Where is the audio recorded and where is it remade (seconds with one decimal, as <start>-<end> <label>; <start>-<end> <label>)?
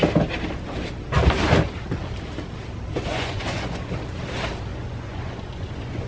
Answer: 0.0-3.1 recorded; 3.1-3.8 remade; 3.8-4.7 recorded; 4.7-6.1 remade